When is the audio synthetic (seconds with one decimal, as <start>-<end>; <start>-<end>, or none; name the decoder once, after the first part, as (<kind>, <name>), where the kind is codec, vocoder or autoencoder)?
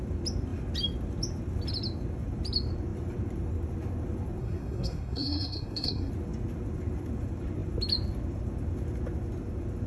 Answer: 4.4-6.1 (codec, SNAC)